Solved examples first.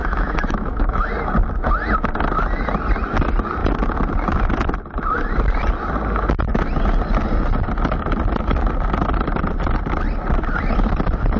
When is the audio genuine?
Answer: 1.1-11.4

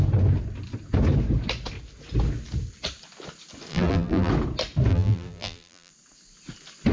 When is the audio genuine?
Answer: 0.0-3.7; 4.3-4.9; 5.9-6.9

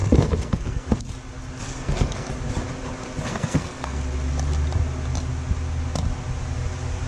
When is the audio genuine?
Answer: 1.0-1.6; 2.3-3.3; 4.0-7.1

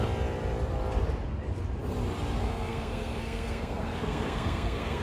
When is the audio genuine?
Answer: 0.0-2.4

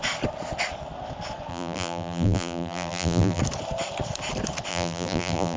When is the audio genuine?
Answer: 0.0-1.5; 3.4-4.7

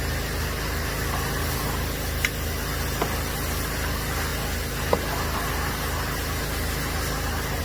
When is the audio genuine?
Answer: 0.0-7.6